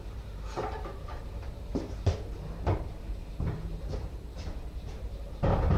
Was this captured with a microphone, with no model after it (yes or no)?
no